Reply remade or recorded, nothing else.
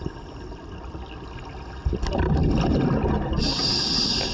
recorded